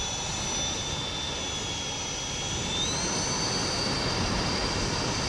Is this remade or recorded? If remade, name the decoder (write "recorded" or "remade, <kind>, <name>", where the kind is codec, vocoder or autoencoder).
recorded